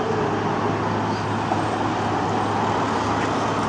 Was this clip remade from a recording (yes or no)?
no